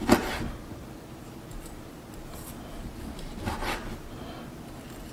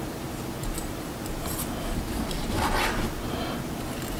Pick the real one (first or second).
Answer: first